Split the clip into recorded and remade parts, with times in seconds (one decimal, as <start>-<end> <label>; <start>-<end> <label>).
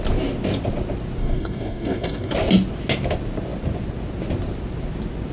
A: 0.0-1.2 recorded; 1.2-2.3 remade; 2.3-5.3 recorded